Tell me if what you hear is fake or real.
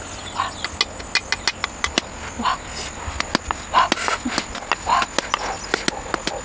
real